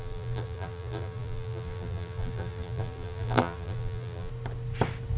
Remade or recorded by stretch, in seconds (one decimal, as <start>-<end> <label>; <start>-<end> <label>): 0.0-4.3 remade; 4.3-5.2 recorded